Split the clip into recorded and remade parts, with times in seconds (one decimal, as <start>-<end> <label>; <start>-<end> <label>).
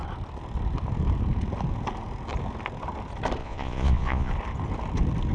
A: 0.0-3.4 recorded; 3.4-4.3 remade; 4.3-5.3 recorded